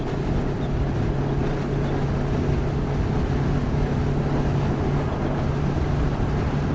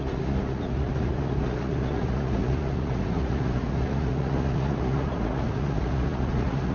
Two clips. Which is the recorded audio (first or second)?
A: first